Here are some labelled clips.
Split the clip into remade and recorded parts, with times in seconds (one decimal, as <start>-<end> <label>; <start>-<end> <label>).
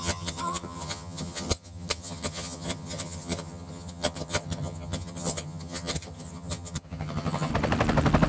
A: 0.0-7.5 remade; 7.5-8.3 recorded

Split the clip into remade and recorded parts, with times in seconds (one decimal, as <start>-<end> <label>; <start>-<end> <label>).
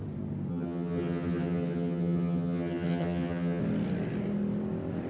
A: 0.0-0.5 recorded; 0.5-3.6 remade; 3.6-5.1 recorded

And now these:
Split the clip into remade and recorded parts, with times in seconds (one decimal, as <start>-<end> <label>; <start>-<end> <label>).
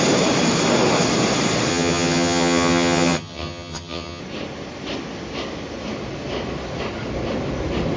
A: 0.0-1.7 recorded; 1.7-4.2 remade; 4.2-8.0 recorded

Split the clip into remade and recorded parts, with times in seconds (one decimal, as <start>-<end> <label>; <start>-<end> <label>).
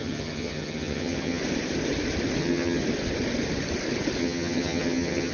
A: 0.0-1.4 remade; 1.4-2.4 recorded; 2.4-2.8 remade; 2.8-4.2 recorded; 4.2-5.3 remade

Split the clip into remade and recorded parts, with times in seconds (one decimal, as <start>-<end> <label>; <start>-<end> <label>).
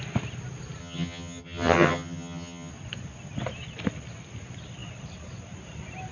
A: 0.0-0.8 recorded; 0.8-2.7 remade; 2.7-6.1 recorded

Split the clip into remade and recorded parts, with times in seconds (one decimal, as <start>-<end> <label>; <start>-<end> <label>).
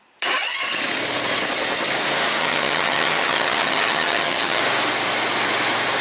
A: 0.0-2.4 recorded; 2.4-4.6 remade; 4.6-6.0 recorded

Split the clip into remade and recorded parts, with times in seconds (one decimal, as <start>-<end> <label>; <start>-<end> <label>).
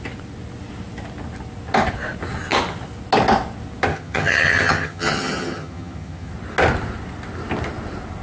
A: 0.0-3.9 recorded; 3.9-6.3 remade; 6.3-8.2 recorded